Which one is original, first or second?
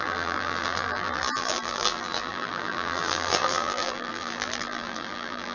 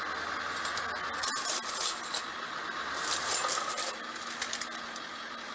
second